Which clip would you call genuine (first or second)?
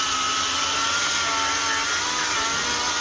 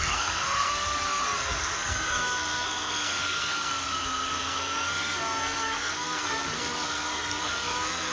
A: first